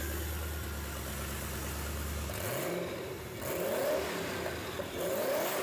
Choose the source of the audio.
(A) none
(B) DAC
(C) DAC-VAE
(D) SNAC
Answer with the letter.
A